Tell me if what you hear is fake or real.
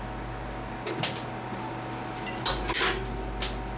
real